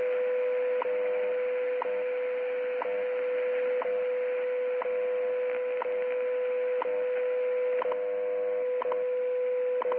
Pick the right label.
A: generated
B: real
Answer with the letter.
B